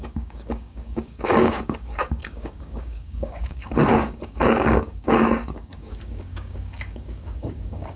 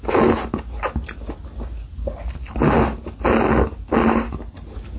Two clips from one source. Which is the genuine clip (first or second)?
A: second